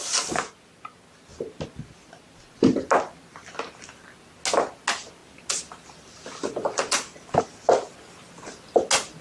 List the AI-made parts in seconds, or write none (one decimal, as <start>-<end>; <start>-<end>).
5.2-7.4